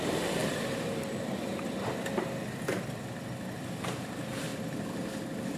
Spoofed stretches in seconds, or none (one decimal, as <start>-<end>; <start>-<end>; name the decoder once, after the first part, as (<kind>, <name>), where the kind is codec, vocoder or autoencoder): 0.0-4.5 (vocoder, BigVGAN v2)